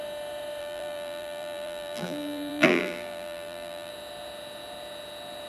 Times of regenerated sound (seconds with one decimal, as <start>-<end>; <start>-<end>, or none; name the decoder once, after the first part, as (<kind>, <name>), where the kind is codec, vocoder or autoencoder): 0.6-3.9 (vocoder, BigVGAN v2)